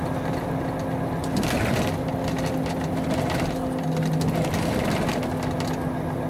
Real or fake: real